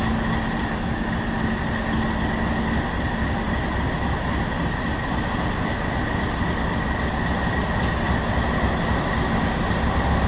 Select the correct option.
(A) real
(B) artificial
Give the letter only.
A